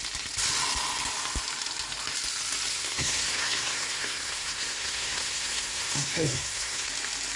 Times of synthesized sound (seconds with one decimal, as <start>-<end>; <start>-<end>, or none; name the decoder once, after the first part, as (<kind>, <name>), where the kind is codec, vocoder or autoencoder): 2.7-6.9 (codec, SNAC)